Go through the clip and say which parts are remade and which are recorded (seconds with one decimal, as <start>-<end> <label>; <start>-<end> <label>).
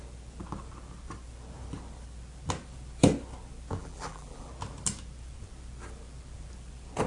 0.0-3.8 recorded; 3.8-4.5 remade; 4.5-7.1 recorded